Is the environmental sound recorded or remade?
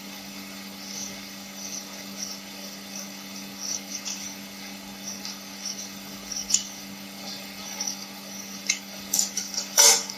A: remade